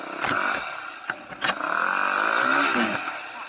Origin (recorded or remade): recorded